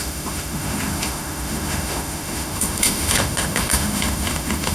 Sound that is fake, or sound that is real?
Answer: fake